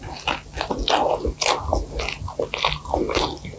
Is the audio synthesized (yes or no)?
no